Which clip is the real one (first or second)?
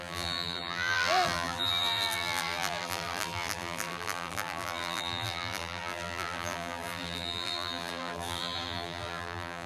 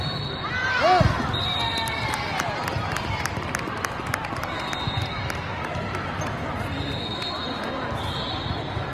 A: second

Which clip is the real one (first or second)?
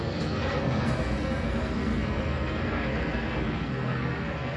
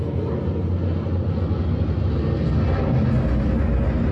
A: second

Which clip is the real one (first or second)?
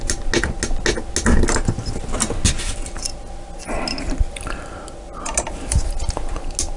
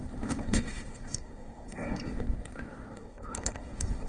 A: first